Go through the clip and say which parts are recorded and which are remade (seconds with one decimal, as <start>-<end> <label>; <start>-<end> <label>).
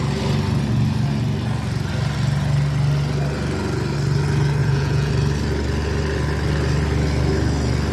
0.0-4.6 recorded; 4.6-5.1 remade; 5.1-7.9 recorded